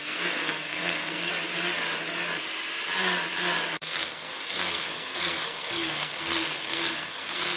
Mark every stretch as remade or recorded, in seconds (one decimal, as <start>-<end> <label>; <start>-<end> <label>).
0.0-1.3 remade; 1.3-3.7 recorded; 3.7-7.6 remade